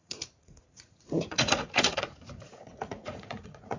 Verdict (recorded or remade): remade